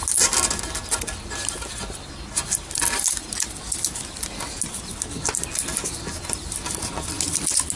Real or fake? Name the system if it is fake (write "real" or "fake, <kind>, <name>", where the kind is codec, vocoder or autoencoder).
real